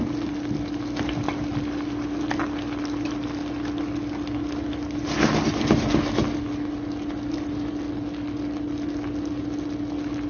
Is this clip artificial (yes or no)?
no